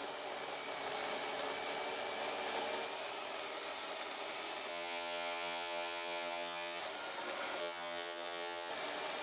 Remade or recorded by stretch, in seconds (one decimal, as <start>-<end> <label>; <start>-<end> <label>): 0.0-4.7 recorded; 4.7-6.8 remade; 6.8-7.6 recorded; 7.6-8.7 remade; 8.7-9.2 recorded